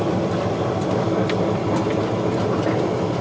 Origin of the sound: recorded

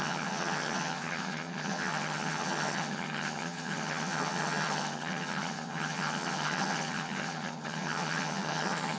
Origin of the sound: remade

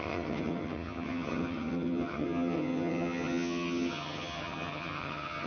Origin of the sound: remade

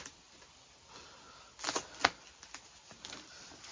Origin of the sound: recorded